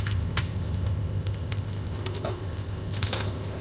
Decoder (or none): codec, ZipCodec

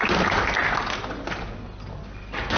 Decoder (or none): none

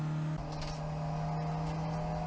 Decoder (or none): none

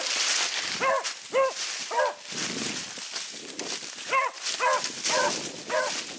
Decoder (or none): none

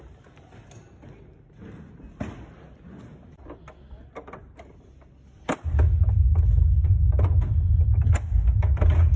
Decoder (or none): none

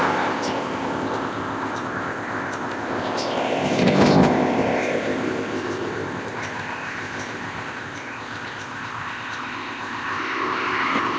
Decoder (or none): codec, ZipCodec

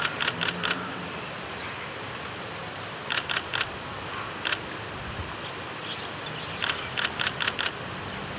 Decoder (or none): none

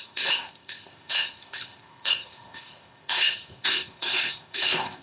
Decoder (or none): codec, ZipCodec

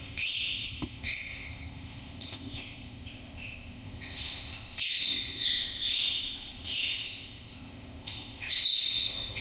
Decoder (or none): codec, ZipCodec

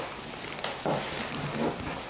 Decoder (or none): none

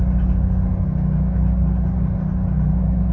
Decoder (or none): none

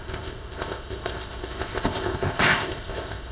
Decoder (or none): codec, ZipCodec